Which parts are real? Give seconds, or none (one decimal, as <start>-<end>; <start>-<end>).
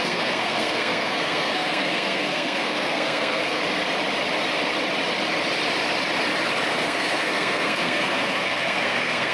3.6-6.7